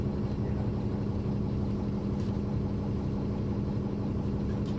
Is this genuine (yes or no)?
yes